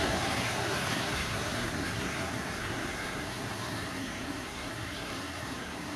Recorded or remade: remade